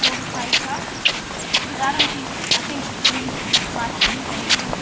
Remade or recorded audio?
recorded